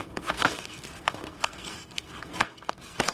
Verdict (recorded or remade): remade